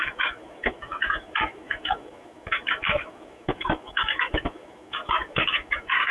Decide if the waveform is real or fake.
fake